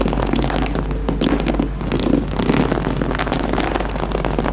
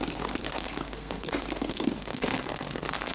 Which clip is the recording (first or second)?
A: first